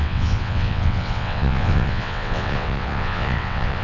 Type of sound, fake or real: fake